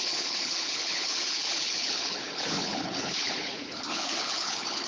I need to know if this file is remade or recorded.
remade